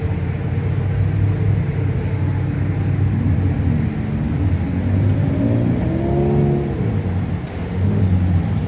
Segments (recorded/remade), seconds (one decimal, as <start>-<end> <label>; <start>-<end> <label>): 0.0-7.5 recorded; 7.5-8.0 remade; 8.0-8.7 recorded